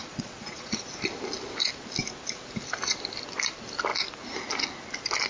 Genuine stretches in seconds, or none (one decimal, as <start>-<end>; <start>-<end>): 0.9-5.3